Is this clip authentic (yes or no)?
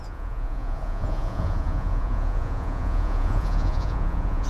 no